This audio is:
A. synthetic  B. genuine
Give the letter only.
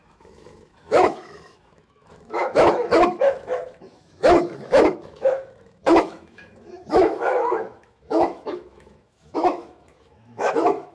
A